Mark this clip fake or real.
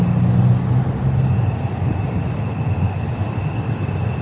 real